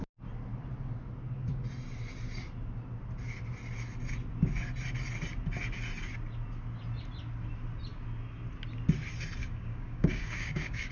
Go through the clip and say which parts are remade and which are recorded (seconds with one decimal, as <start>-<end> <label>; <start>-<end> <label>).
0.0-9.4 recorded; 9.4-10.9 remade